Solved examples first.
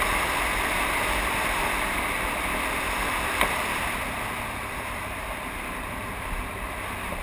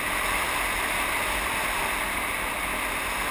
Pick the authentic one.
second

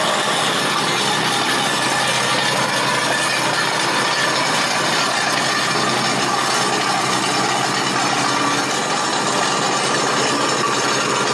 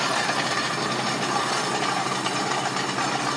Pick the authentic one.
first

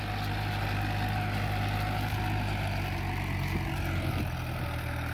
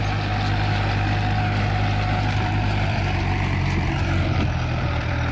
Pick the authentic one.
first